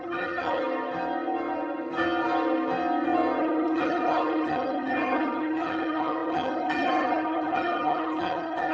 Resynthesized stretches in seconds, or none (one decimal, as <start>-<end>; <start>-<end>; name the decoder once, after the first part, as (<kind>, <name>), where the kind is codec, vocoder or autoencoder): 0.0-0.6 (vocoder, HiFi-GAN); 3.4-8.7

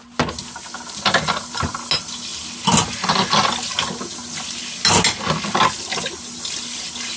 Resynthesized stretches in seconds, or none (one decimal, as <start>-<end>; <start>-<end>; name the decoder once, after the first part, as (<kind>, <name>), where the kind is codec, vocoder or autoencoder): none

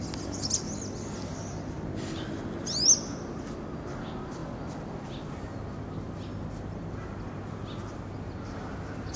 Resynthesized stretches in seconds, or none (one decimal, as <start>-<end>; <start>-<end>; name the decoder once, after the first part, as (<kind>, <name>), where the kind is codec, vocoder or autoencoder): none

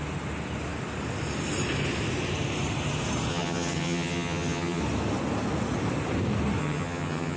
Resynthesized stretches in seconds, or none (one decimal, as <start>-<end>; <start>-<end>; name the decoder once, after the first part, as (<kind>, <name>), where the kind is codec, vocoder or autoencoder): 3.3-4.8 (vocoder, HiFi-GAN); 6.6-7.4

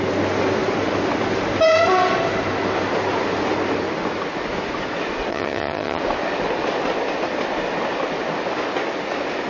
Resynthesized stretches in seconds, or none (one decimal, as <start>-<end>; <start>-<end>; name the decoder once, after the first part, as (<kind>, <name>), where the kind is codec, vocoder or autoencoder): 5.3-6.0 (vocoder, HiFi-GAN)

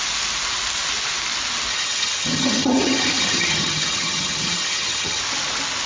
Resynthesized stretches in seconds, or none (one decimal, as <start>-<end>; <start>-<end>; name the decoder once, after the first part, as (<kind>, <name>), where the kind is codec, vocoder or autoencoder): 1.7-5.2 (vocoder, HiFi-GAN)